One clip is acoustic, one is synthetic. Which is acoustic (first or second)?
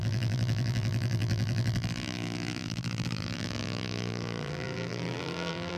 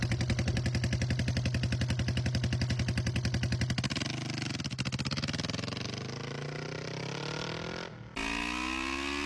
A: second